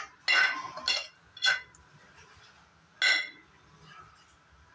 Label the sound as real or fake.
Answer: real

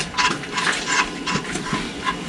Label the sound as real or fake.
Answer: real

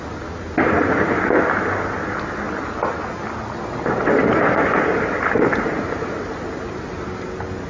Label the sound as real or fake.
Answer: real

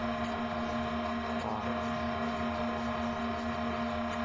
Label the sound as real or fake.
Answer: real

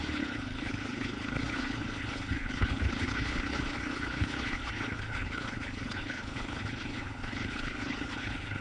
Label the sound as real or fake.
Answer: fake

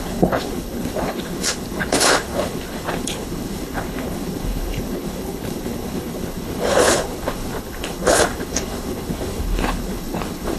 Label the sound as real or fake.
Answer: fake